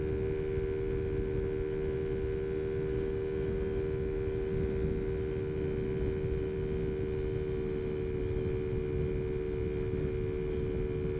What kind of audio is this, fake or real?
real